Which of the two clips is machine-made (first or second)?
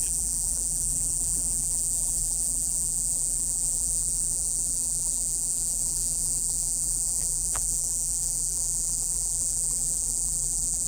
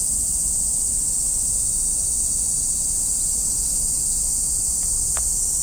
first